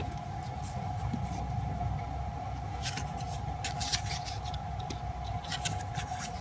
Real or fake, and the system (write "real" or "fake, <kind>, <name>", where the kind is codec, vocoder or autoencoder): real